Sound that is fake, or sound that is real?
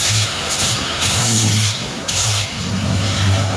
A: fake